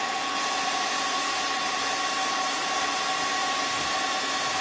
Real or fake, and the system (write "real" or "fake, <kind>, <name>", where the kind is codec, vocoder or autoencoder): real